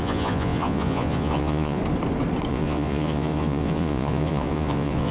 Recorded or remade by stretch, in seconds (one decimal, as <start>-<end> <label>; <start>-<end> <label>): 0.0-1.8 remade; 1.8-2.5 recorded; 2.5-5.1 remade